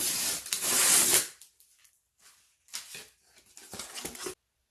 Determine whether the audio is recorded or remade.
recorded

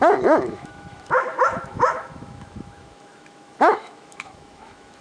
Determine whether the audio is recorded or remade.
remade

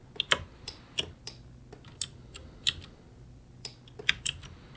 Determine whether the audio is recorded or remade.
recorded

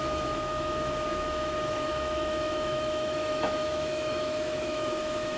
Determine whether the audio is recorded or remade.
remade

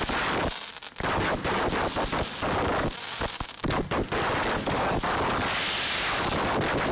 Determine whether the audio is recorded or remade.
recorded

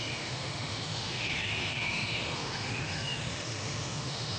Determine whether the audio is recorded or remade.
remade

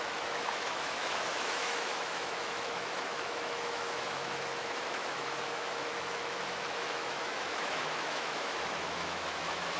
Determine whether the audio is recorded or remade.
remade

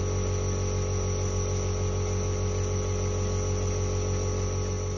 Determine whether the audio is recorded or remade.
recorded